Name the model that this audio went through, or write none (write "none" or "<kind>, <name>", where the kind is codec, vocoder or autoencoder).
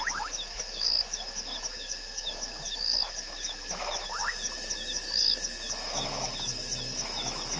autoencoder, DAC-VAE